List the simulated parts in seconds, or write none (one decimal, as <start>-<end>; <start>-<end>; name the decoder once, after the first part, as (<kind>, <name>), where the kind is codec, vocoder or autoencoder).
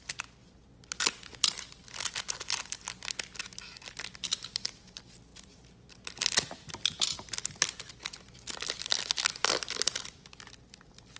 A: none